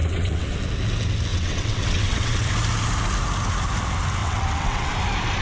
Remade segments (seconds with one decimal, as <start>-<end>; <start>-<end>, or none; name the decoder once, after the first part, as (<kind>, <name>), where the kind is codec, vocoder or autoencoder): 0.0-0.6 (vocoder, WaveNeXt); 1.3-2.5; 4.2-4.9